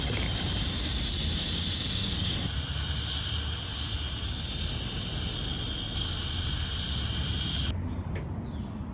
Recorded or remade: recorded